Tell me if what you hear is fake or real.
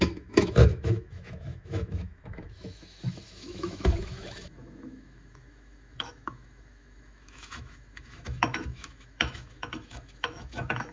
fake